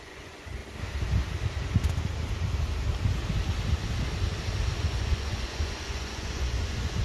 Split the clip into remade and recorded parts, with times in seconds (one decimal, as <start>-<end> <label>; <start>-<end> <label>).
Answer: 0.0-0.6 remade; 0.6-4.8 recorded; 4.8-7.0 remade